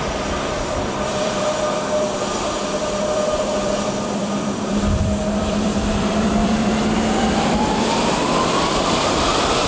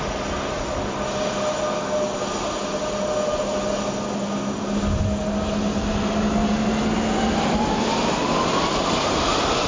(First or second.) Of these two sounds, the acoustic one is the second